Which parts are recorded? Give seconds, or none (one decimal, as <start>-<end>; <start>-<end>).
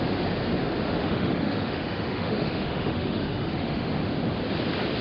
0.0-0.9; 3.9-5.0